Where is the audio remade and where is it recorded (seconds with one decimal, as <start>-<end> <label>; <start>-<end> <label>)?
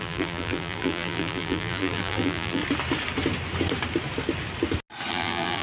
0.0-2.6 remade; 2.6-5.1 recorded; 5.1-5.6 remade